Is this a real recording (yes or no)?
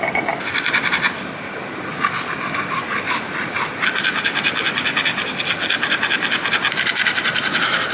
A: yes